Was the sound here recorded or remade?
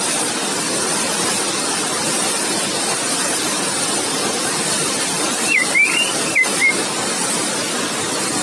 recorded